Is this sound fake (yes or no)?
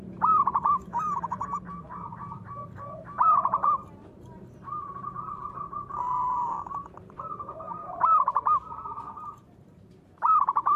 yes